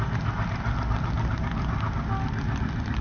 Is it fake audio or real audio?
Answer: real